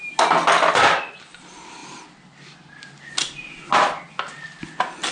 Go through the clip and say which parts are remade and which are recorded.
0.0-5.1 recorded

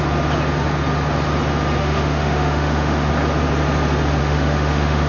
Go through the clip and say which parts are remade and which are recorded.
0.0-1.8 recorded; 1.8-3.1 remade; 3.1-4.2 recorded; 4.2-5.1 remade

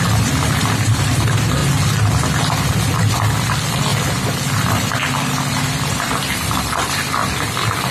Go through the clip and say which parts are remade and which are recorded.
0.0-1.6 remade; 1.6-3.5 recorded; 3.5-7.2 remade; 7.2-7.9 recorded

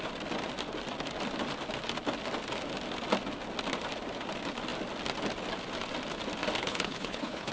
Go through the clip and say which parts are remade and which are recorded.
0.0-6.6 recorded; 6.6-7.5 remade

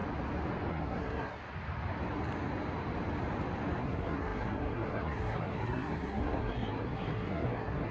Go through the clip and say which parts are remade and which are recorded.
0.0-0.7 recorded; 0.7-1.4 remade; 1.4-3.8 recorded; 3.8-7.9 remade

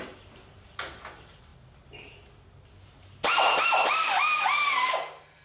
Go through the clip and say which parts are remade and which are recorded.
0.0-1.5 remade; 1.5-3.6 recorded; 3.6-5.4 remade

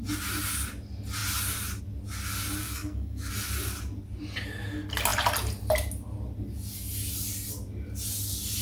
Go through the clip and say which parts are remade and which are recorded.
0.0-2.6 recorded; 2.6-3.3 remade; 3.3-8.6 recorded